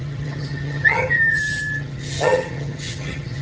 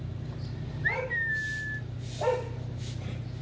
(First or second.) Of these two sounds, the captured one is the second